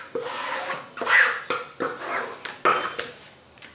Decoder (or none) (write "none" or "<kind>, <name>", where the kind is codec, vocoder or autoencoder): none